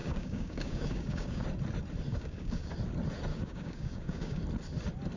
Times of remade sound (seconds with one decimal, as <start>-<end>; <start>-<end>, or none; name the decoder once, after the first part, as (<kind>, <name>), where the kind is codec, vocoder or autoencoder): 0.0-1.4 (codec, DAC); 2.1-2.7; 3.3-4.4